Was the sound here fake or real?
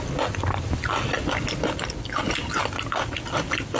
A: real